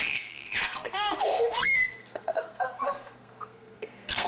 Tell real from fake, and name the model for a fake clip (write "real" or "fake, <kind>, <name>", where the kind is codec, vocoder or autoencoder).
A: fake, codec, SNAC